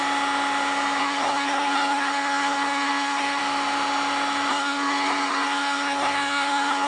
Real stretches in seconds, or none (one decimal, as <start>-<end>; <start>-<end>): 0.0-1.0; 3.4-4.5